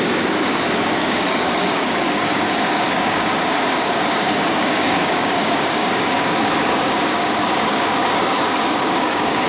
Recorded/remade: remade